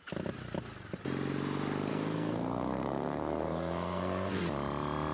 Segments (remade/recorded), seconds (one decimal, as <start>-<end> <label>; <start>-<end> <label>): 0.0-1.9 recorded; 1.9-4.4 remade; 4.4-5.1 recorded